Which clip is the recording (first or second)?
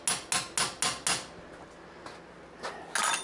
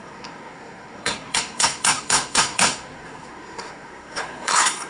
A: first